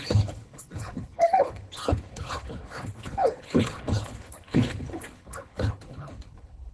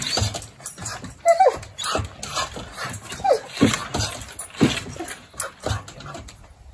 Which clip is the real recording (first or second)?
second